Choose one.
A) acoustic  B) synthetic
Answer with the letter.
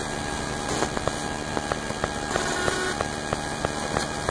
A